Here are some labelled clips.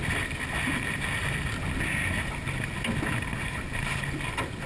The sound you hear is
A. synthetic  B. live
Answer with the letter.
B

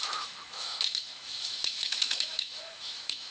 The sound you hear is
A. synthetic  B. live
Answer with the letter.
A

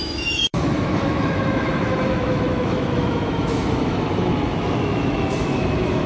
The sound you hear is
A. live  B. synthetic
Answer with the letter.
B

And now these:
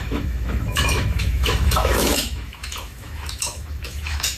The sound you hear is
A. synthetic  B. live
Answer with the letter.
A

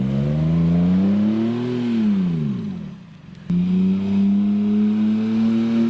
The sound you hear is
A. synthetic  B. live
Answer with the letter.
B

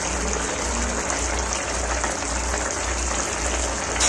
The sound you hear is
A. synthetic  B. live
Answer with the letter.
B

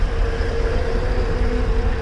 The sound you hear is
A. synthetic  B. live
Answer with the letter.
B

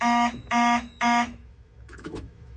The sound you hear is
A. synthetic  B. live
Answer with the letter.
A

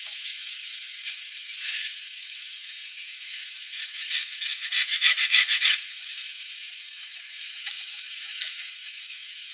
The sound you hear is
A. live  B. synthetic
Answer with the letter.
B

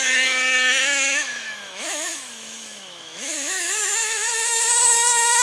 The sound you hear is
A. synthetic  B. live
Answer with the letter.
A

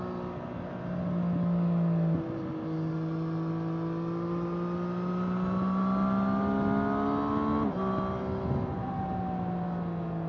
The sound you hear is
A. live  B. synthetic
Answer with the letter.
A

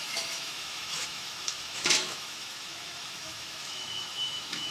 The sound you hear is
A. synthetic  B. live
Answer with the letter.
A